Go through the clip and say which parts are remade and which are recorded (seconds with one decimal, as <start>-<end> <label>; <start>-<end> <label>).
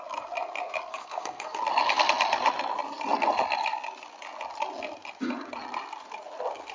0.0-0.9 recorded; 0.9-1.6 remade; 1.6-6.7 recorded